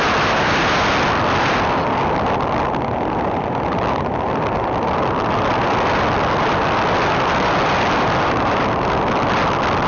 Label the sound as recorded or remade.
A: recorded